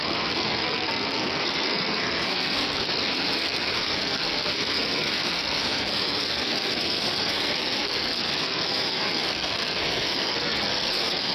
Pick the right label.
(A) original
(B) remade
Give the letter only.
B